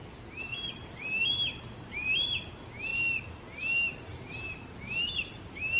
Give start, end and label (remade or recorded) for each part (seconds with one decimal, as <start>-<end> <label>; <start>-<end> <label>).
0.0-5.8 recorded